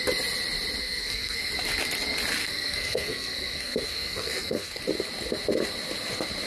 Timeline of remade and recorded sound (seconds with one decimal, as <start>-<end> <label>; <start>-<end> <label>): 0.0-0.8 recorded; 0.8-1.5 remade; 1.5-2.4 recorded; 2.4-4.8 remade; 4.8-6.5 recorded